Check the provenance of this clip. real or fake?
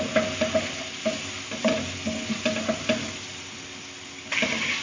real